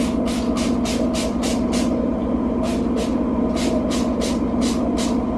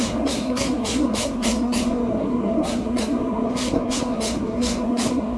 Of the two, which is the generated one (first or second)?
second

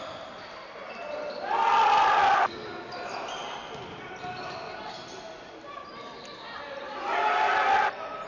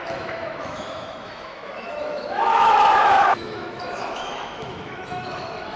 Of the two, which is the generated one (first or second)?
second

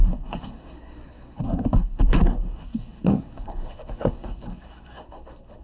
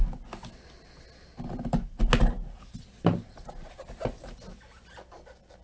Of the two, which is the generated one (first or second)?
first